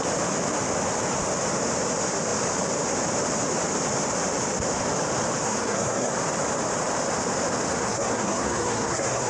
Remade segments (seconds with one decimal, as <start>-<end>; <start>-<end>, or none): 5.4-6.1; 7.7-9.3